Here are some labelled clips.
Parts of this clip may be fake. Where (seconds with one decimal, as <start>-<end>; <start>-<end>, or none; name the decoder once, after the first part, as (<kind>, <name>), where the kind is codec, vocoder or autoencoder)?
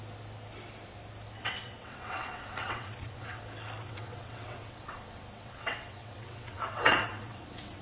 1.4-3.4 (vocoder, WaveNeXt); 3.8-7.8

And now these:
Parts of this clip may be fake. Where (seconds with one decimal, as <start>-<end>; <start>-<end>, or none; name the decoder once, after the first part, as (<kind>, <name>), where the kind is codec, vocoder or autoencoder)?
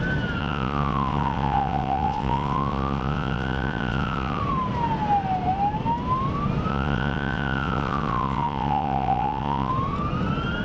0.4-4.4 (vocoder, WaveNeXt); 6.7-9.7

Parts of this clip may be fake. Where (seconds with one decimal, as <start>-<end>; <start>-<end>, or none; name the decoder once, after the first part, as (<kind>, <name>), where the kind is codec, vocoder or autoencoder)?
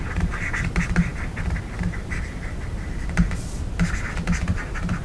none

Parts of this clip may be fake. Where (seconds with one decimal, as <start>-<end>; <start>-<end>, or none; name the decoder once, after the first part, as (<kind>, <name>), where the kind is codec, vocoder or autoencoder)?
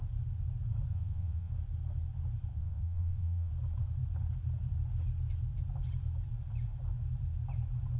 0.9-1.5 (vocoder, WaveNeXt); 2.5-3.5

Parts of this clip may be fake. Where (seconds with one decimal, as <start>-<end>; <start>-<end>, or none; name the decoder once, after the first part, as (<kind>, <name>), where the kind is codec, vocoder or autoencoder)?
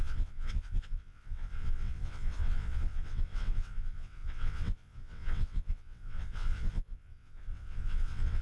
0.0-8.4 (vocoder, WaveNeXt)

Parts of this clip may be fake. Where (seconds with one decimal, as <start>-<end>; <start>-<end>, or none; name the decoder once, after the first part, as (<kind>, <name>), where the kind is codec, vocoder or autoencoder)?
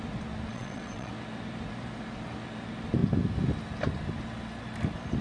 0.5-1.1 (vocoder, WaveNeXt)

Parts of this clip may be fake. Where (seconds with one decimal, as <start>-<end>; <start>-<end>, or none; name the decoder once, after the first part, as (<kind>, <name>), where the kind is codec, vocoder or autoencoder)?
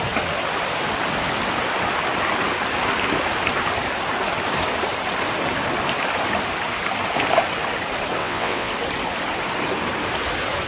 8.2-8.7 (vocoder, WaveNeXt)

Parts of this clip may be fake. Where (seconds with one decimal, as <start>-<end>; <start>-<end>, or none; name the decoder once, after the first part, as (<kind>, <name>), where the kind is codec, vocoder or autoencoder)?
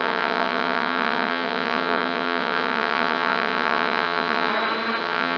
0.0-4.5 (vocoder, WaveNeXt); 5.0-5.4